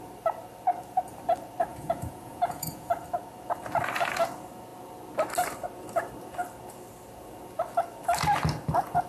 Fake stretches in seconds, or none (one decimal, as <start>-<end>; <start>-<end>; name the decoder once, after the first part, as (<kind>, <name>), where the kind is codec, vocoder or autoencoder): 1.7-2.9 (vocoder, Vocos)